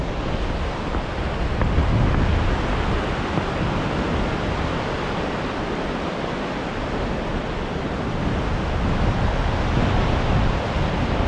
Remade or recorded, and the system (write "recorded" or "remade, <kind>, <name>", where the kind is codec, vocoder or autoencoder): recorded